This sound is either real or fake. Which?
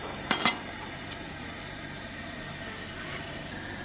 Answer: fake